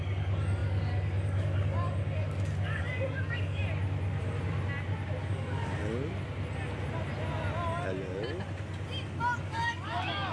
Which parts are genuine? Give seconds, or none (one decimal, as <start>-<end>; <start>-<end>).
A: 3.6-5.2; 5.8-9.4